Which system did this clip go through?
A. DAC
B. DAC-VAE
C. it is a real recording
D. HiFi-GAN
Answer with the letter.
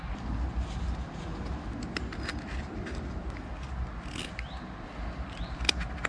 C